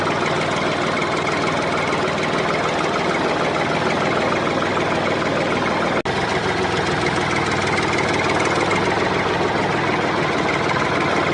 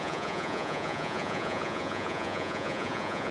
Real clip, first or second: first